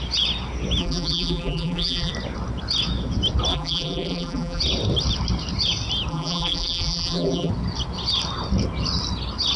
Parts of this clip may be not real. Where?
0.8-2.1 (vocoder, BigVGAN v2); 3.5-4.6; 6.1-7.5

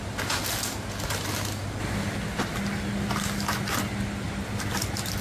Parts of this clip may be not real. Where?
none

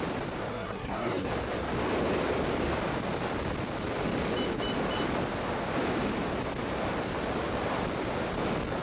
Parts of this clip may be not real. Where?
0.5-1.3 (codec, SNAC)

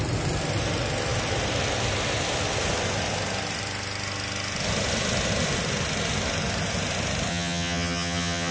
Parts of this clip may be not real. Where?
7.3-8.5 (vocoder, HiFi-GAN)

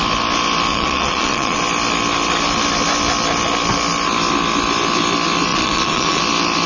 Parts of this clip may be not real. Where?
0.7-1.6 (vocoder, Vocos); 5.5-6.2